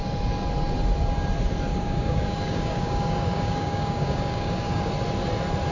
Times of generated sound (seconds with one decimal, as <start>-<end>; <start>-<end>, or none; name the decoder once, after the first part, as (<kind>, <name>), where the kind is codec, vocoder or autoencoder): 1.7-4.9 (codec, DAC)